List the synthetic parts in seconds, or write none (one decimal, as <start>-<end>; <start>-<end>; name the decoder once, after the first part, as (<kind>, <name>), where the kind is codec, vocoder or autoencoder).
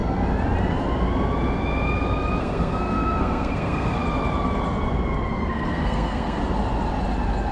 2.4-4.0 (codec, SNAC); 5.3-6.4